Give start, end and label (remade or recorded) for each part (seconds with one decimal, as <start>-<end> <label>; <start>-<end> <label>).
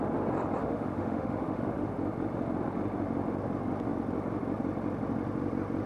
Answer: 0.0-0.6 recorded; 0.6-1.9 remade; 1.9-5.9 recorded